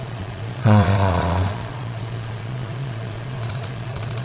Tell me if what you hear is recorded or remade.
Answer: remade